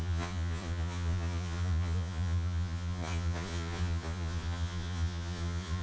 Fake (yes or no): yes